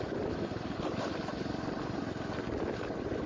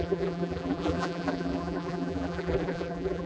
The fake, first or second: second